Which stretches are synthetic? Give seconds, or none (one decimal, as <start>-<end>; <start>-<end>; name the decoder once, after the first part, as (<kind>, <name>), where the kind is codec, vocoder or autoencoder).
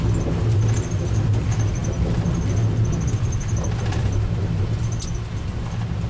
none